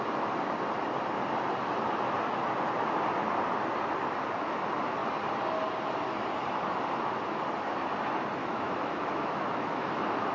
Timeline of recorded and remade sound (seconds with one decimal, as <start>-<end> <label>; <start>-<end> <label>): 0.0-8.4 recorded; 8.4-9.9 remade; 9.9-10.3 recorded